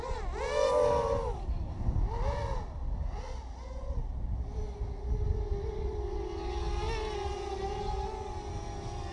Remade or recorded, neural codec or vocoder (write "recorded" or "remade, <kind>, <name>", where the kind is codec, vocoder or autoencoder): recorded